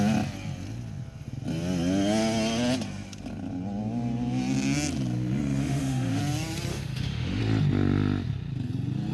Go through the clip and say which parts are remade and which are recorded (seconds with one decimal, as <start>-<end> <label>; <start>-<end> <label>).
0.0-5.6 recorded; 5.6-6.2 remade; 6.2-6.7 recorded; 6.7-7.4 remade; 7.4-9.1 recorded